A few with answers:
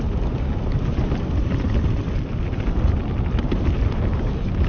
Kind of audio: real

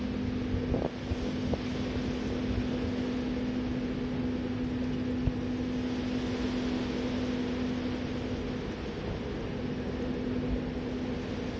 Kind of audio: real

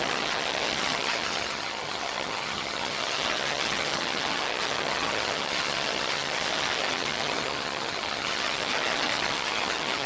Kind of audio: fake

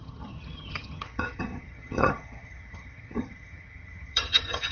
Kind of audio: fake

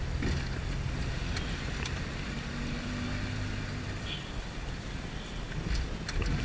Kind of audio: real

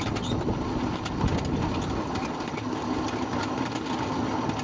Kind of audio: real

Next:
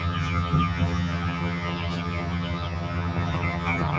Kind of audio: fake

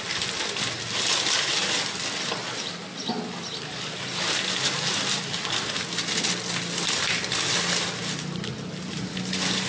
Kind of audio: real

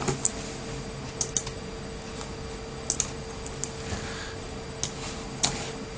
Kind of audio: real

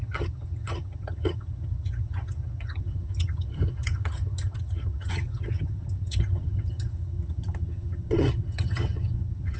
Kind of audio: fake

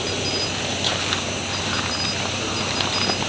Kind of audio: real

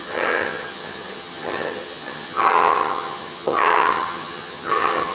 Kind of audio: fake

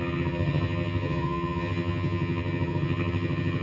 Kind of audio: fake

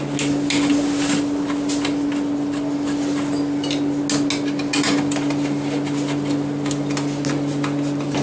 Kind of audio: real